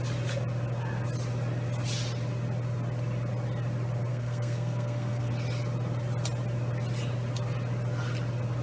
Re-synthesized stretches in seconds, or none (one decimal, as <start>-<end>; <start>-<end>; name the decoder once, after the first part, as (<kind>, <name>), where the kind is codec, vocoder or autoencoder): 4.1-5.3 (codec, SNAC)